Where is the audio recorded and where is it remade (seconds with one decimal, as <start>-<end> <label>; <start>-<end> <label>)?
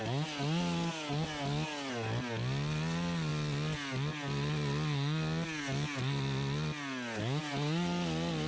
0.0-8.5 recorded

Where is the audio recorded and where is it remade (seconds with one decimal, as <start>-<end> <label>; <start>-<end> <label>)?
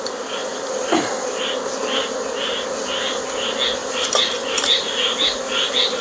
0.0-0.4 recorded; 0.4-1.4 remade; 1.4-3.8 recorded; 3.8-6.0 remade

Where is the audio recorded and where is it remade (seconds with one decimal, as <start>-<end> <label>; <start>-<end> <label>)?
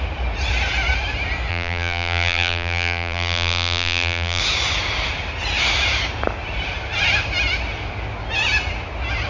0.0-1.5 recorded; 1.5-4.4 remade; 4.4-9.3 recorded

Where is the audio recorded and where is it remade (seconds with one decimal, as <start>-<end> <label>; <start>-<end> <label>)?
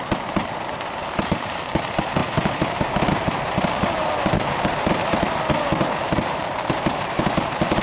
0.0-7.8 remade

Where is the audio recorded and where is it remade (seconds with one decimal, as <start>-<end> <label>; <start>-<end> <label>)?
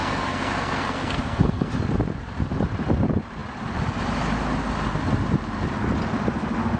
0.0-1.7 remade; 1.7-6.8 recorded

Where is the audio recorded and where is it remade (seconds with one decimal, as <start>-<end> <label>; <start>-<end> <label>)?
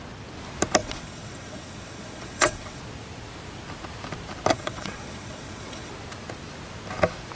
0.0-0.8 recorded; 0.8-2.8 remade; 2.8-4.5 recorded; 4.5-5.9 remade; 5.9-7.4 recorded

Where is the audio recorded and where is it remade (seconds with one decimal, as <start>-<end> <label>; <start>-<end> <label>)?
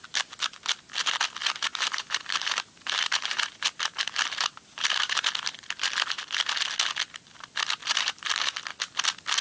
0.0-1.4 recorded; 1.4-5.3 remade; 5.3-7.8 recorded; 7.8-8.6 remade; 8.6-9.4 recorded